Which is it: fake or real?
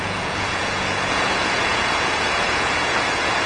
fake